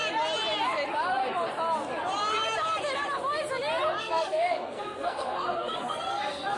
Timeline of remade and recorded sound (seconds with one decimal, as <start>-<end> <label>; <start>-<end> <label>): 0.0-4.0 recorded; 4.0-6.6 remade